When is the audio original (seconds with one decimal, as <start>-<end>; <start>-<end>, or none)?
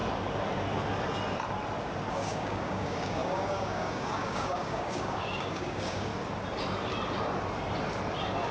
0.0-2.1; 6.1-8.5